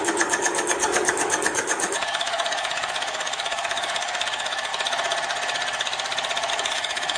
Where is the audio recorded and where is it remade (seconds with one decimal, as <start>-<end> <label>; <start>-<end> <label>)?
0.0-4.7 remade; 4.7-6.5 recorded; 6.5-7.2 remade